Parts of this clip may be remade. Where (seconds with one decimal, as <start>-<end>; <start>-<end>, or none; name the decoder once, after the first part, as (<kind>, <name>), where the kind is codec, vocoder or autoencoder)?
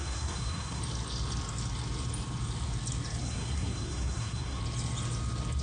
0.0-0.8 (codec, SNAC); 3.2-4.6